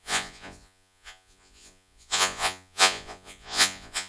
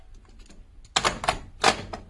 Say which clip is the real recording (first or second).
second